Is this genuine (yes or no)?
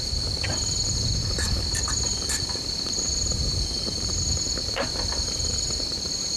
yes